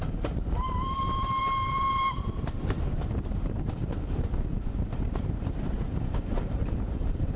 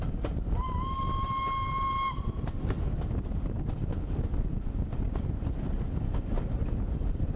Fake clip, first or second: first